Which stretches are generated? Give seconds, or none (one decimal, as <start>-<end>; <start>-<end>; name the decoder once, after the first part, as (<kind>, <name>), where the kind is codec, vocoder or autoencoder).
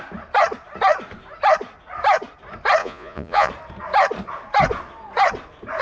2.8-3.5 (vocoder, Vocos)